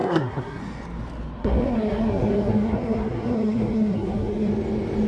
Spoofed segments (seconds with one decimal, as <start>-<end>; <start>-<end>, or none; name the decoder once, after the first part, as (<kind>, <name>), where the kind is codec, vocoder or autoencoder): 0.0-0.6 (codec, SNAC); 1.4-4.5